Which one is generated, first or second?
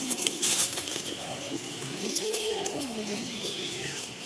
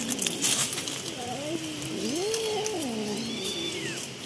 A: first